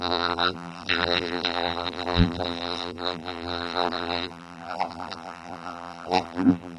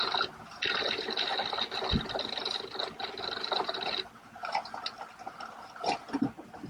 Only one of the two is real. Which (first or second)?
second